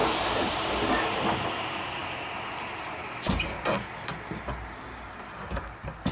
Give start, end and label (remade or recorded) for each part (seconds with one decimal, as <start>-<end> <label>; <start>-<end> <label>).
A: 0.0-0.7 remade; 0.7-6.1 recorded